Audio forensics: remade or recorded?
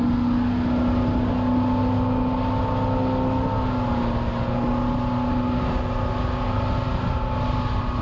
recorded